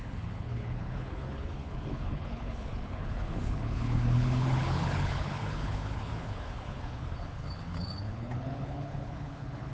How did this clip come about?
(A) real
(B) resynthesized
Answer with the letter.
B